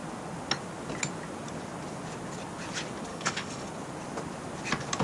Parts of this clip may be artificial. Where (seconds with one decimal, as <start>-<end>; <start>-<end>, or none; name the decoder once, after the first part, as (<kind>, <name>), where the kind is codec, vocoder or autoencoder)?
3.1-3.7 (codec, DAC)